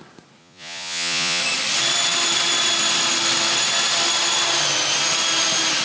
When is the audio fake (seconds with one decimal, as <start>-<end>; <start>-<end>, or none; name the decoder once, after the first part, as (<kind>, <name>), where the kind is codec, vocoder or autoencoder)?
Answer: 0.4-1.4 (vocoder, Vocos)